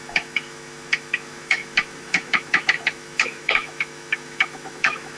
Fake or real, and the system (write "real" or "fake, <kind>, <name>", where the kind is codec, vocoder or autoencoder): fake, autoencoder, DAC-VAE